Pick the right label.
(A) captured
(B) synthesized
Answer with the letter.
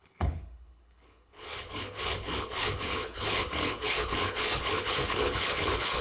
B